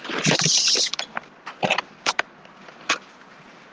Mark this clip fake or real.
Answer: real